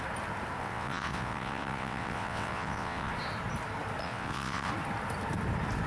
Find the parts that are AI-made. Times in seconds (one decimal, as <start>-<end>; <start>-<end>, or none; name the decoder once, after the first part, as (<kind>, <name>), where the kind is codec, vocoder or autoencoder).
0.6-3.1 (vocoder, WaveNeXt); 4.0-4.7